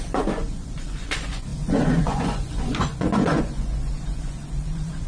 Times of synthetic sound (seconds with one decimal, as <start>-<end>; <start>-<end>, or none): 0.0-5.1